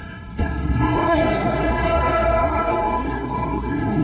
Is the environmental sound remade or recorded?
remade